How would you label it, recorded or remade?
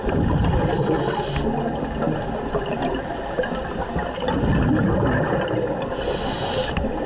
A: recorded